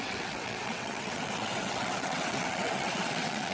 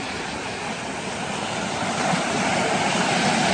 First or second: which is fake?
first